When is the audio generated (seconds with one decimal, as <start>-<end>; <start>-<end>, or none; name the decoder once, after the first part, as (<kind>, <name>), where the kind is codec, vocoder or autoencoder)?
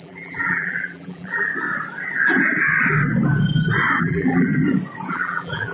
0.0-1.5 (vocoder, BigVGAN v2); 4.0-4.5; 5.1-5.7